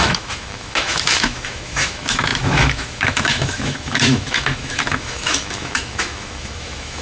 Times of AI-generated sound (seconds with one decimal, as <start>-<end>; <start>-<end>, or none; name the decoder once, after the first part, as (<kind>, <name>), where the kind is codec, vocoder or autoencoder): 0.0-7.0 (autoencoder, DAC-VAE)